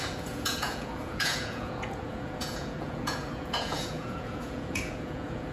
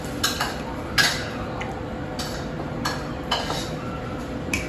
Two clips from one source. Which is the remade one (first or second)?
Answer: first